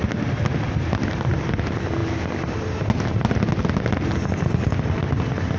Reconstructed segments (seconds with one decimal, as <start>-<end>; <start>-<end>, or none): none